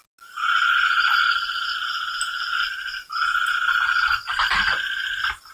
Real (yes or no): yes